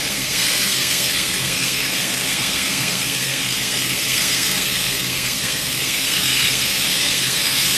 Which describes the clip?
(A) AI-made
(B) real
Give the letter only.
A